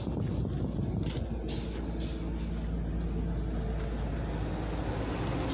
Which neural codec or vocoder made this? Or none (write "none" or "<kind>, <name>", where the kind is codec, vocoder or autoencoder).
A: none